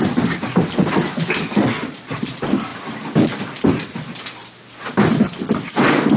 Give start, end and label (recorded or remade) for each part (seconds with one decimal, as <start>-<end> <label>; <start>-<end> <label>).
0.0-6.2 recorded